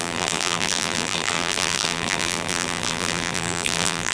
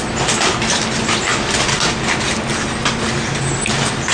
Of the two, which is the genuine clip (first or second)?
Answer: second